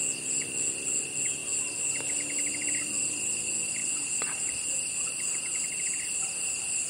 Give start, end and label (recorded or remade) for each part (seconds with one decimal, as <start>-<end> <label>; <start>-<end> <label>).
0.0-6.9 recorded